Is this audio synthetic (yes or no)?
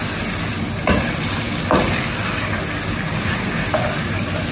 no